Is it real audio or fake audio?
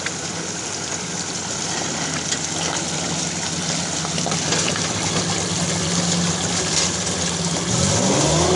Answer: real